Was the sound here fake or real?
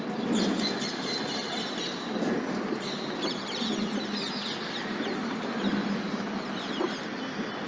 real